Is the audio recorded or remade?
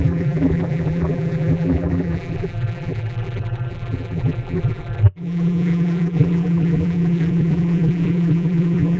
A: remade